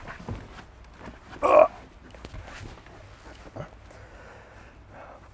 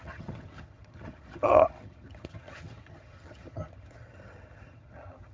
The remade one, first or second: second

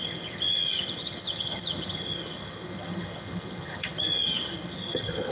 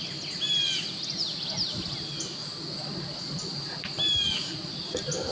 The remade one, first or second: first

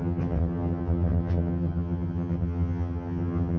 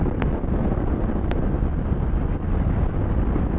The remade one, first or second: first